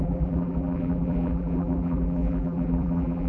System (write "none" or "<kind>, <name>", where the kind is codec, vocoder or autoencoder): vocoder, BigVGAN v2